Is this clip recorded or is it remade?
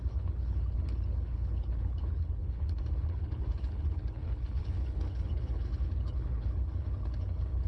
remade